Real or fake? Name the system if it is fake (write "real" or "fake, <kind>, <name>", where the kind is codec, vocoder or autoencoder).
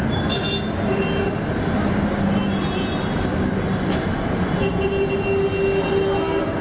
real